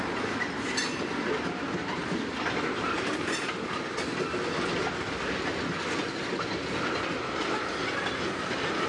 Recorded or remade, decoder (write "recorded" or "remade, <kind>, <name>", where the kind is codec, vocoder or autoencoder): recorded